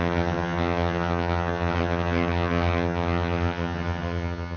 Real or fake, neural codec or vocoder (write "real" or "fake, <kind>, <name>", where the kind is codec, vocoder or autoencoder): fake, vocoder, HiFi-GAN